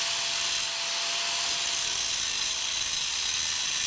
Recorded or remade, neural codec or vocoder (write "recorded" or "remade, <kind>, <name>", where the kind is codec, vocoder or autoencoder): recorded